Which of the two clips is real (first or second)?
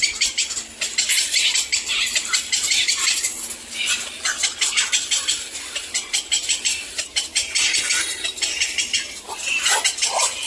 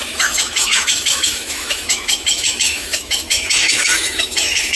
first